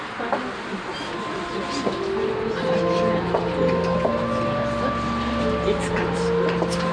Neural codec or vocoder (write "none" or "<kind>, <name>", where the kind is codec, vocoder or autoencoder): none